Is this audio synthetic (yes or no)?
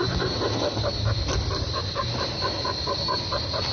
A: no